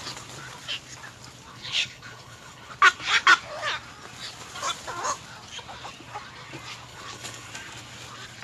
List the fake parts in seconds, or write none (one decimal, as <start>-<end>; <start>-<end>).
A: 1.5-2.7; 6.9-7.5

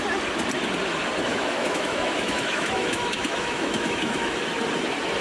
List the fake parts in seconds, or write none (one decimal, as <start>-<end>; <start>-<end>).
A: 1.3-4.4

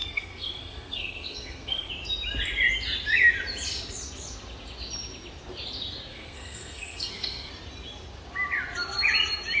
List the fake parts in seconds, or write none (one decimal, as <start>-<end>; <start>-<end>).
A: 0.0-1.9; 6.1-7.5

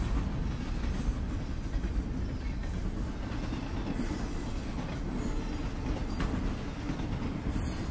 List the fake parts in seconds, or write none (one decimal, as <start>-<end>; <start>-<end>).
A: none

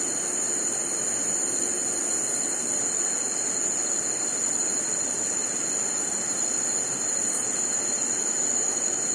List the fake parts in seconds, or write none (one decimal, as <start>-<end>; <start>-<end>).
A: none